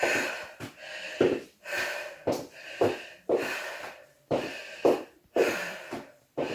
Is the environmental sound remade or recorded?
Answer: remade